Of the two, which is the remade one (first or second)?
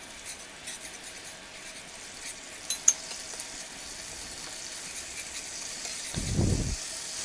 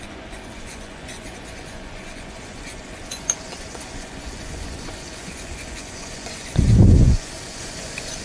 second